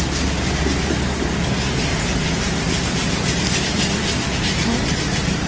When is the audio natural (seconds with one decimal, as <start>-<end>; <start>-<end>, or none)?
0.0-1.9